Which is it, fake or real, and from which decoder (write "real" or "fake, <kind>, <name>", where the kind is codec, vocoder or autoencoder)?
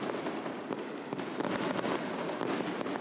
real